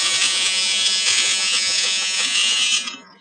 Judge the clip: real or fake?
fake